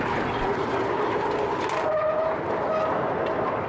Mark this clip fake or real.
real